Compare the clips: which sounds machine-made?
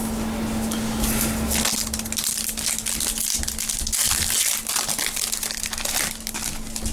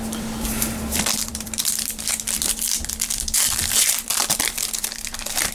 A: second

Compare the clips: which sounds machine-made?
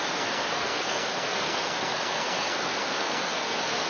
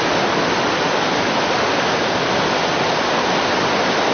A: first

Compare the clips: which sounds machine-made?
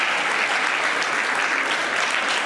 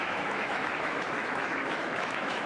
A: second